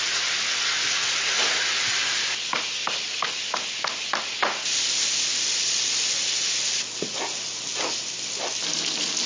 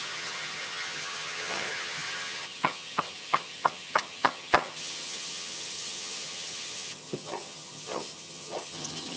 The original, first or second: first